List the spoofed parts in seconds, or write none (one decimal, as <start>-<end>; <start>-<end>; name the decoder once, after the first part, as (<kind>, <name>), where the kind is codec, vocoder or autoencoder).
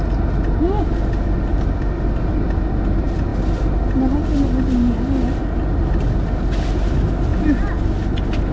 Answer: none